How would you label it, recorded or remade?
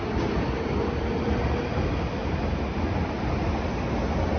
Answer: recorded